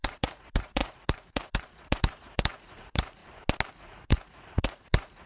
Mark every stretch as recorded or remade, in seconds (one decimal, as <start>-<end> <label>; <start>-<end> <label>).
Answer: 0.0-3.2 remade; 3.2-3.7 recorded; 3.7-5.3 remade